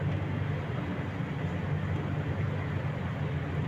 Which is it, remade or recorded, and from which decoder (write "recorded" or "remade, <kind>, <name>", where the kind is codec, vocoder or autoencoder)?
recorded